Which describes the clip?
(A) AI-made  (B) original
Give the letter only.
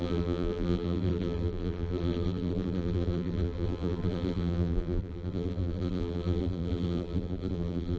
A